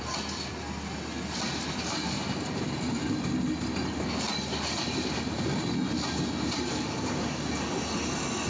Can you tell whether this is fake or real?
real